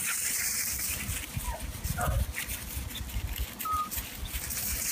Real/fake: real